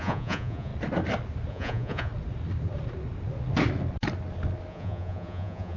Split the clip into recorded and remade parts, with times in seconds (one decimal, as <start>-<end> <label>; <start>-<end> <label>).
0.0-0.7 remade; 0.7-1.5 recorded; 1.5-2.1 remade; 2.1-4.7 recorded; 4.7-5.8 remade